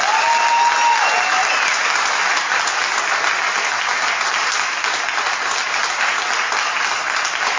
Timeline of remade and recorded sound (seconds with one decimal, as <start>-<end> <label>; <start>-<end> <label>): 0.0-7.6 recorded

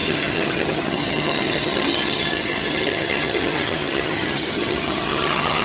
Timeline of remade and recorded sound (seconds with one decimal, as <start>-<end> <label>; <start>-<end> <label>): 0.0-5.6 remade

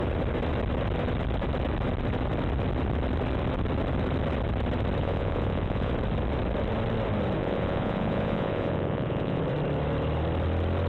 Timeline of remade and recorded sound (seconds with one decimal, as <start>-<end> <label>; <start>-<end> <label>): 0.0-5.0 recorded; 5.0-5.9 remade; 5.9-7.4 recorded; 7.4-9.4 remade; 9.4-10.9 recorded

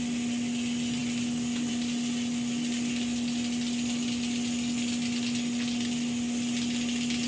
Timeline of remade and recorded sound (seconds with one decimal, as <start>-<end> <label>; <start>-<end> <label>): 0.0-7.3 recorded